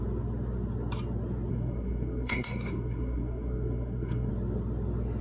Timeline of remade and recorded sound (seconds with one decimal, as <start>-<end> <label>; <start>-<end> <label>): 0.0-1.5 recorded; 1.5-4.3 remade; 4.3-5.2 recorded